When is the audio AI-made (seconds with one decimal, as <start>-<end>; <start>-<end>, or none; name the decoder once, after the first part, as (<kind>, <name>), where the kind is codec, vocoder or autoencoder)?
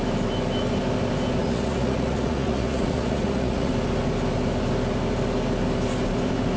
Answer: 1.4-3.7 (vocoder, Vocos)